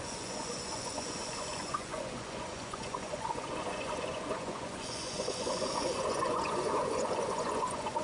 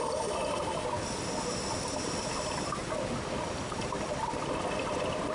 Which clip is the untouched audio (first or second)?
second